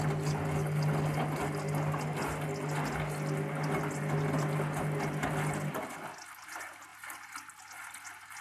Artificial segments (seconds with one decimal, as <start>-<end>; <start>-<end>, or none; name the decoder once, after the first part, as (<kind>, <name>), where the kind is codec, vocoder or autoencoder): none